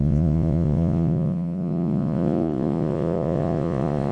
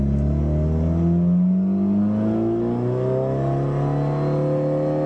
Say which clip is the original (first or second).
second